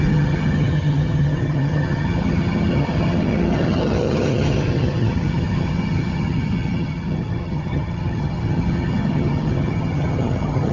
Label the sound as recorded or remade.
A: remade